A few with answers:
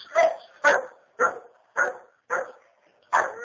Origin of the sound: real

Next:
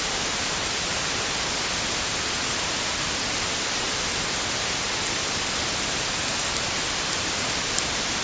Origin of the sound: real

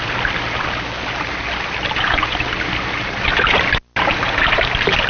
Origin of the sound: real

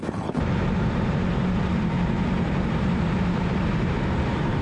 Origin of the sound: fake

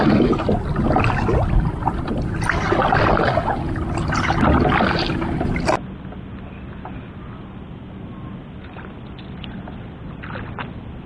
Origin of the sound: real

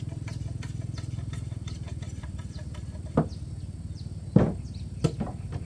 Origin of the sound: real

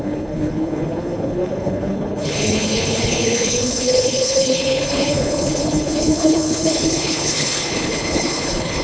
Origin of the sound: fake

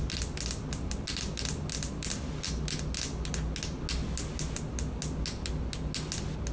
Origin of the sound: real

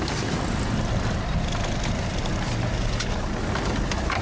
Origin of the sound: real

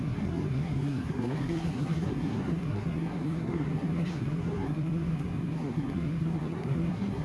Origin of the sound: fake